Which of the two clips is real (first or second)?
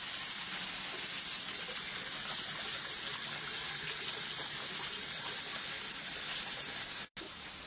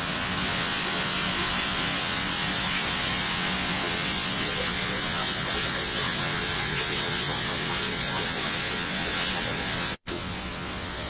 first